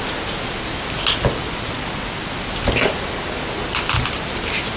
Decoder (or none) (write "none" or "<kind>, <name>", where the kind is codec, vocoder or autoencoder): none